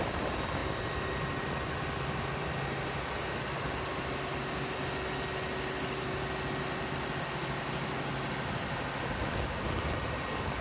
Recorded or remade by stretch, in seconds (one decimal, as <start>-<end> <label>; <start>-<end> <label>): 0.0-10.6 recorded